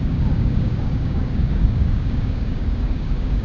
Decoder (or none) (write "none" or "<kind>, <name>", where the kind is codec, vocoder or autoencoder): codec, DAC